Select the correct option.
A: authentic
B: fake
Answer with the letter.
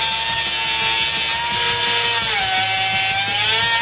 A